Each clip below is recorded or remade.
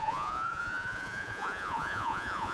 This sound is remade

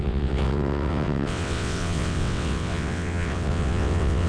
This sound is remade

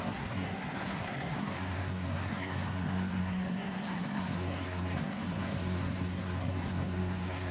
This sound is remade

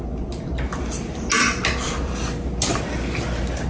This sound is recorded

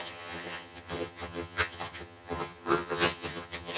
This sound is remade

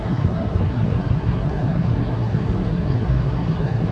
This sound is remade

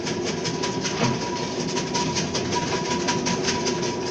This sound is recorded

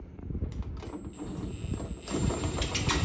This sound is recorded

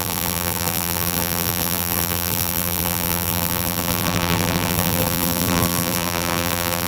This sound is remade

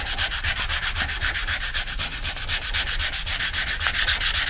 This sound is recorded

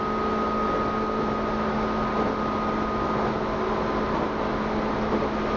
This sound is recorded